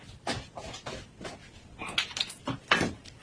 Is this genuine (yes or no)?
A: yes